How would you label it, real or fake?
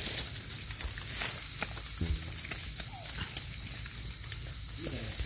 real